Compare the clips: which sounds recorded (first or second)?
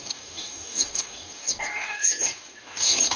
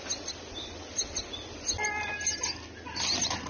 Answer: second